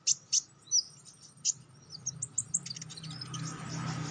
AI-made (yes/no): no